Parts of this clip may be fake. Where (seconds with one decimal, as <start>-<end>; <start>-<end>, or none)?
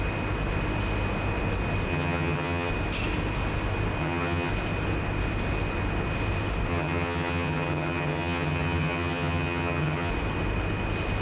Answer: 1.9-2.7; 4.0-4.5; 6.7-10.1